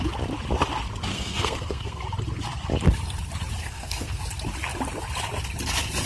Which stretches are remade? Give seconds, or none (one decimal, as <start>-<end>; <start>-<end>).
1.1-2.0; 3.6-4.2